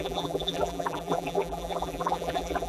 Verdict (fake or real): fake